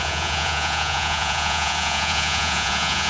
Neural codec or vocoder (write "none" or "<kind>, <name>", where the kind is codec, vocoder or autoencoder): vocoder, Vocos